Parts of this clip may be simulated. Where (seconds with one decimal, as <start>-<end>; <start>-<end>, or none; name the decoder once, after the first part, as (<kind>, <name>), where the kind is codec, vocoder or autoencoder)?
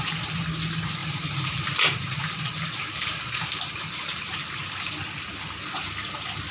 1.0-4.9 (vocoder, BigVGAN v2)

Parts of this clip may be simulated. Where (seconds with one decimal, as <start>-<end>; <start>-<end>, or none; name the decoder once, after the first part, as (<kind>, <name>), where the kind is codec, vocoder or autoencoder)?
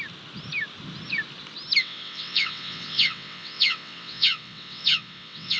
1.8-5.6 (vocoder, WaveNeXt)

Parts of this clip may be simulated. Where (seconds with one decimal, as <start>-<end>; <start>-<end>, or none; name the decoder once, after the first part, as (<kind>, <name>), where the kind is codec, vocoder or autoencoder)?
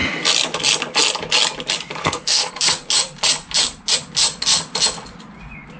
2.0-2.5 (codec, SNAC)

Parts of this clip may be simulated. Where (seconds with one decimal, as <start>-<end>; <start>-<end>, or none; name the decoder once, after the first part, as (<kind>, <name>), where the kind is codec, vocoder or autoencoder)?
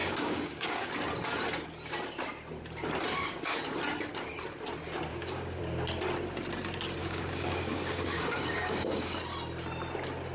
0.0-0.9 (codec, DAC); 5.1-5.6; 7.0-9.2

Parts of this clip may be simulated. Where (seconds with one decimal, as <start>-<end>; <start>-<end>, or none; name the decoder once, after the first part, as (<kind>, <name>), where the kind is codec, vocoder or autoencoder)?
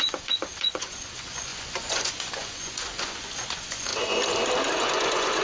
0.0-3.9 (vocoder, Vocos); 4.8-5.4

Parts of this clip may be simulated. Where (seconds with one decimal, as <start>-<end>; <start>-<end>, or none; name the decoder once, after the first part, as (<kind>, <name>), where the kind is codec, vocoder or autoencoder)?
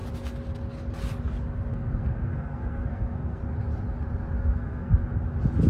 1.7-3.4 (codec, SNAC); 4.4-4.9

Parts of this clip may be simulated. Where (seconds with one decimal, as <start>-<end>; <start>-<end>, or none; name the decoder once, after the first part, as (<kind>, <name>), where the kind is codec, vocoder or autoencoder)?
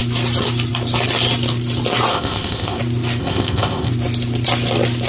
2.1-2.8 (codec, ZipCodec); 3.2-3.9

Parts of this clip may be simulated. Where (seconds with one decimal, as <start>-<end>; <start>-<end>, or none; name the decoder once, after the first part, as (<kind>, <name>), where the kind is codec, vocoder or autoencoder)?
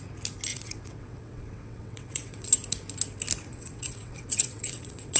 0.5-2.5 (vocoder, WaveNeXt); 3.5-5.2